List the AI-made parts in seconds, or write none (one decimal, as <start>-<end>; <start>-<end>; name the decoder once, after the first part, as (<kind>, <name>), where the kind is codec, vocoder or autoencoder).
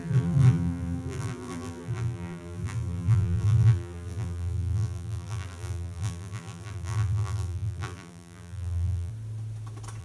0.0-9.1 (vocoder, BigVGAN v2)